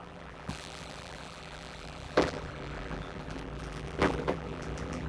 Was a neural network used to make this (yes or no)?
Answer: yes